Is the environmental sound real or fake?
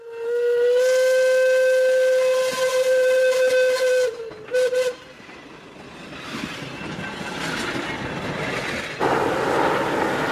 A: real